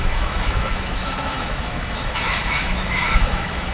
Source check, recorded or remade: remade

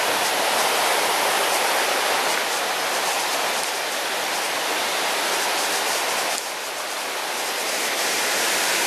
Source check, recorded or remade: recorded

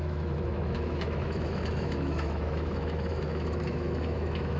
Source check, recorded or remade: remade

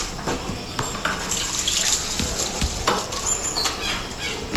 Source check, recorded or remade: recorded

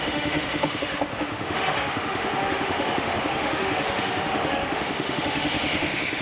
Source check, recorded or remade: remade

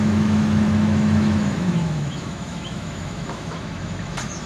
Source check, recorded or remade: remade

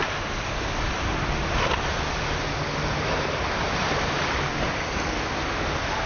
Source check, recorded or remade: recorded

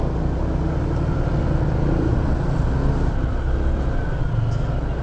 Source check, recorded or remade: recorded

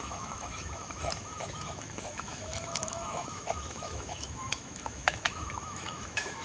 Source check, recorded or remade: remade